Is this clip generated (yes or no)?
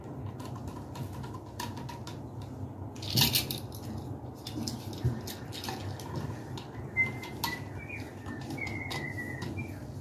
no